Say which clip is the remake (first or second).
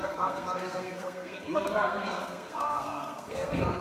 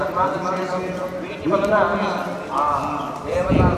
first